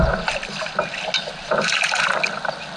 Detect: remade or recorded recorded